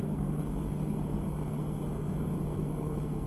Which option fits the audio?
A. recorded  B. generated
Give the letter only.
B